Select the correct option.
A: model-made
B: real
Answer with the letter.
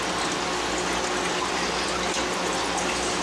B